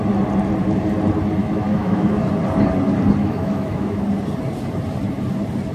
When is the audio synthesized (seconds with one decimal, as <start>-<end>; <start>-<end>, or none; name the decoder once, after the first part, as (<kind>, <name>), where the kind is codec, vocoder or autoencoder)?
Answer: 1.4-2.3 (autoencoder, DAC-VAE); 3.2-4.0